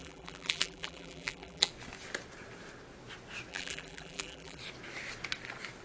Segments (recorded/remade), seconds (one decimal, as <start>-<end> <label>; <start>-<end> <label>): 0.0-1.7 remade; 1.7-3.5 recorded; 3.5-4.6 remade; 4.6-5.8 recorded